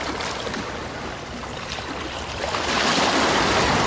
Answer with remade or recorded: recorded